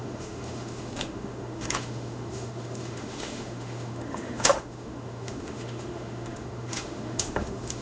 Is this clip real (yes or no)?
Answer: no